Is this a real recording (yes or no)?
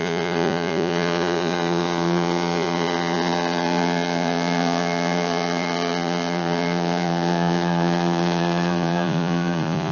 no